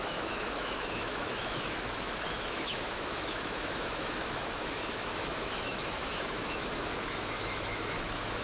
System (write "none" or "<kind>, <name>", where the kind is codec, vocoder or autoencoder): autoencoder, DAC-VAE